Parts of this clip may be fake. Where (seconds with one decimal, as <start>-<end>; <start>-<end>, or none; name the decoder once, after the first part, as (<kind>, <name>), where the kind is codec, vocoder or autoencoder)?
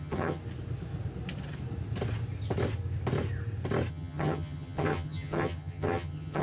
0.0-0.4 (vocoder, HiFi-GAN); 3.9-6.4